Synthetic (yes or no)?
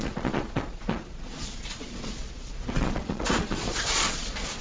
yes